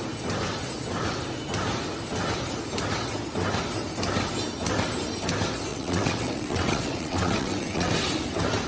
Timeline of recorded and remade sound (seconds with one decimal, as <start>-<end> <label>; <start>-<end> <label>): 0.0-5.7 recorded; 5.7-7.9 remade; 7.9-8.7 recorded